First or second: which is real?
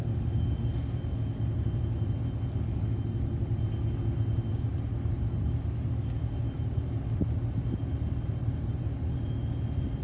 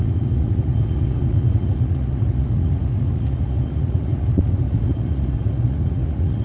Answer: first